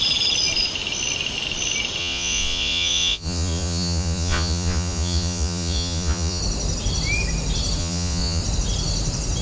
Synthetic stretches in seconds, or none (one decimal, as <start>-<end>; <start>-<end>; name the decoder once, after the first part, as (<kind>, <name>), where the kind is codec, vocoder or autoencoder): 2.0-6.4 (vocoder, Vocos); 7.8-8.4